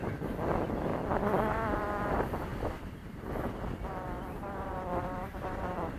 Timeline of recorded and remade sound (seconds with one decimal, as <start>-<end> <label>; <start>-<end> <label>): 0.0-0.9 remade; 0.9-2.1 recorded; 2.1-2.5 remade; 2.5-3.9 recorded; 3.9-6.0 remade